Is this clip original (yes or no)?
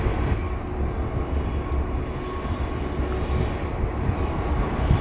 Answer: yes